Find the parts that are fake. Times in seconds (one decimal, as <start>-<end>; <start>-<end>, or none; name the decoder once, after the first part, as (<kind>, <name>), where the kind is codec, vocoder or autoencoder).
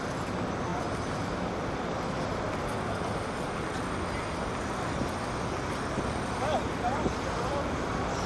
none